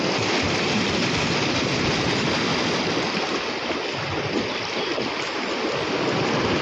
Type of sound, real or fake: real